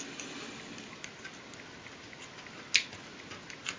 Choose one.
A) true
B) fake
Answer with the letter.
A